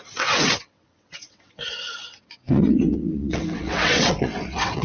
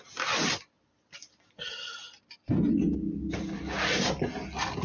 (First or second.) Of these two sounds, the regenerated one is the first